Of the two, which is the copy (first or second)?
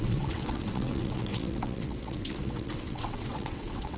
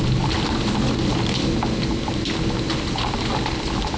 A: first